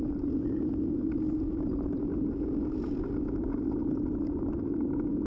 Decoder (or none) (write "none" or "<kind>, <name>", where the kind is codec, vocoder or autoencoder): none